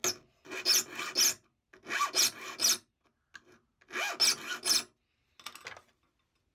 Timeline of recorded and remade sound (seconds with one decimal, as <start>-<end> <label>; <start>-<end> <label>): 0.0-6.5 recorded